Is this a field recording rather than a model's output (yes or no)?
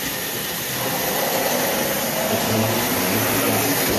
yes